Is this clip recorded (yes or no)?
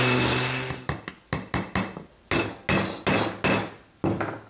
yes